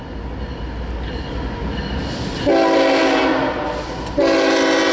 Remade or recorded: recorded